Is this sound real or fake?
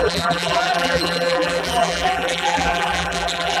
fake